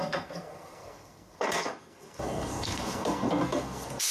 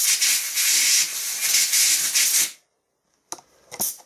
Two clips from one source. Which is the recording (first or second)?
second